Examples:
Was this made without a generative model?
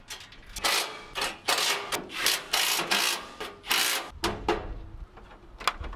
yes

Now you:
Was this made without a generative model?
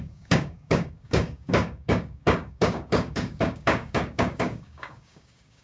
no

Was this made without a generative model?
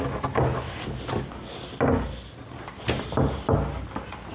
yes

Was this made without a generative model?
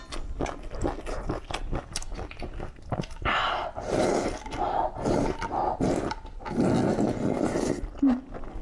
yes